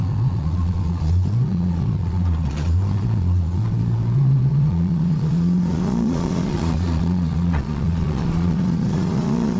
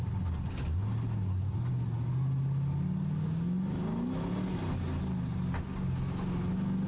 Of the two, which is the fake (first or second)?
first